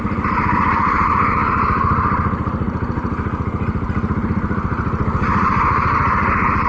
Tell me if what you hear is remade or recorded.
recorded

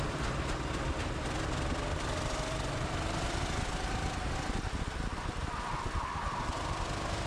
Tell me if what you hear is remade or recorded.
recorded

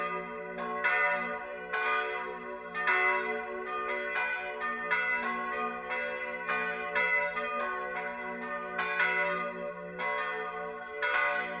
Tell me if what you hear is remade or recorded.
recorded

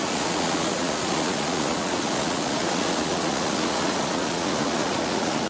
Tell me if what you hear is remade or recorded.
remade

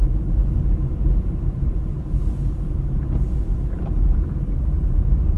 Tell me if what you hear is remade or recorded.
remade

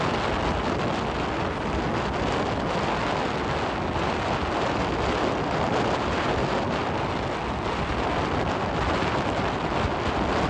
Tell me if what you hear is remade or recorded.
recorded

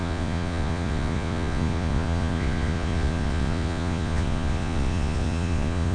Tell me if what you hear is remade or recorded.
remade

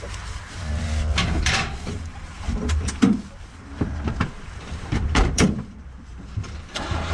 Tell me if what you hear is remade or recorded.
remade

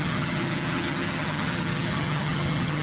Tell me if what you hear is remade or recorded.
remade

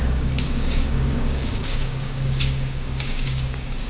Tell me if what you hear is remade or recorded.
remade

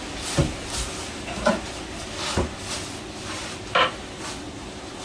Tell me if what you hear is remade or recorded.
recorded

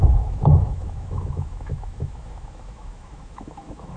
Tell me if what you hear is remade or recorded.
remade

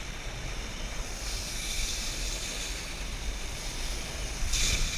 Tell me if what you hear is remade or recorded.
remade